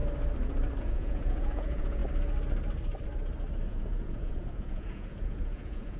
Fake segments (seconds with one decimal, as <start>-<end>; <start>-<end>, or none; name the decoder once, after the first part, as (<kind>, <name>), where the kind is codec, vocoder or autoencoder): 0.8-2.0 (vocoder, Vocos); 3.7-6.0